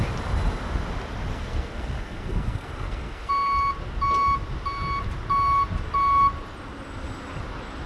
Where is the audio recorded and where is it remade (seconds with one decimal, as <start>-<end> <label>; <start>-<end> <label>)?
0.0-1.3 recorded; 1.3-3.3 remade; 3.3-7.9 recorded